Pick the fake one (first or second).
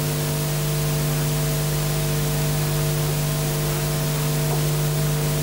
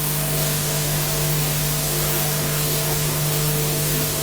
second